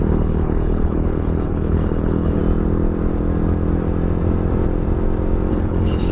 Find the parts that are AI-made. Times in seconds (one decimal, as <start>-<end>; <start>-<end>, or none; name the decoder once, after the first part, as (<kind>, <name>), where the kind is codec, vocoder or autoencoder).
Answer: 0.0-2.4 (codec, HILCodec); 5.5-6.1